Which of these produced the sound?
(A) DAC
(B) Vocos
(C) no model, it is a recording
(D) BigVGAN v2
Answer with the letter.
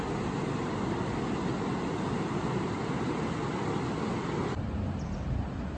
C